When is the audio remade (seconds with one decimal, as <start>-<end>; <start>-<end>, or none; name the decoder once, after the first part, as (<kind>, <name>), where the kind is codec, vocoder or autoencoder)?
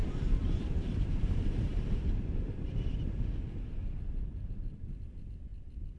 0.0-0.6 (vocoder, BigVGAN v2); 1.7-4.2; 5.5-6.0